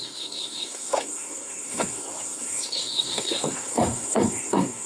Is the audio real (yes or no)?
no